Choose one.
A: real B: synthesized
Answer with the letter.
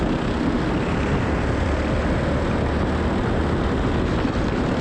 A